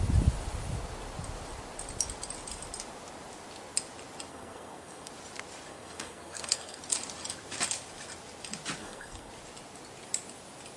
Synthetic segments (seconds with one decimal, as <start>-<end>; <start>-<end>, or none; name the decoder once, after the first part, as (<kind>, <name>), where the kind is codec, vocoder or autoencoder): 4.3-5.1 (codec, SNAC); 5.7-6.8; 8.8-9.3